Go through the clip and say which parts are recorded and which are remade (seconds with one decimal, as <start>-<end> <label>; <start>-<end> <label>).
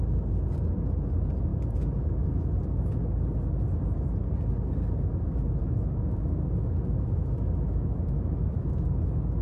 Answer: 0.0-1.5 recorded; 1.5-2.5 remade; 2.5-5.6 recorded; 5.6-9.0 remade; 9.0-9.4 recorded